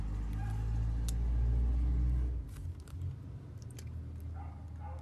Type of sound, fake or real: real